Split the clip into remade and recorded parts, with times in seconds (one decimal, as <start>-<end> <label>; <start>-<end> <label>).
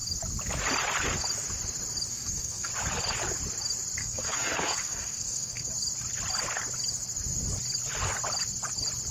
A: 0.0-2.1 recorded; 2.1-2.7 remade; 2.7-4.0 recorded; 4.0-5.7 remade; 5.7-9.1 recorded